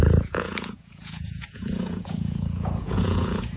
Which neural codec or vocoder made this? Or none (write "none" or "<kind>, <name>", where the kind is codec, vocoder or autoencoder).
vocoder, Vocos